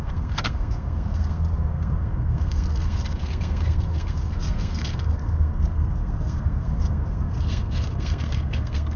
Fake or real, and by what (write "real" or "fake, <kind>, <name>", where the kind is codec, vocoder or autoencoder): fake, codec, SNAC